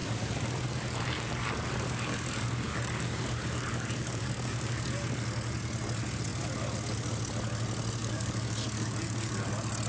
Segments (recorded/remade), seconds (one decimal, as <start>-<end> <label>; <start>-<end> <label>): 0.0-5.1 remade; 5.1-8.0 recorded; 8.0-9.5 remade; 9.5-9.9 recorded